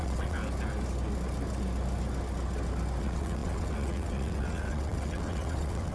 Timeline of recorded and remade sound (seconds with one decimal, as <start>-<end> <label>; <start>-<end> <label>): 0.0-0.4 remade; 0.4-3.0 recorded; 3.0-5.9 remade